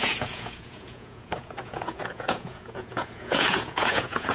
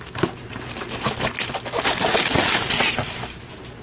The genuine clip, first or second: second